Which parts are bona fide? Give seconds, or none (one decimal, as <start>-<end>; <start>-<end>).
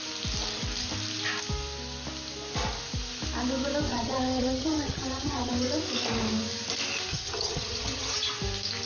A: 0.0-3.9; 5.5-7.1; 8.3-8.9